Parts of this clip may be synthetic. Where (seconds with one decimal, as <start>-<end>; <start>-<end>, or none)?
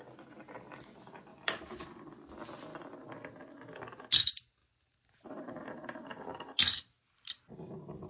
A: 1.3-1.9; 4.6-7.4